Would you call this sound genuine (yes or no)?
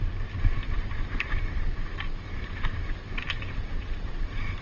no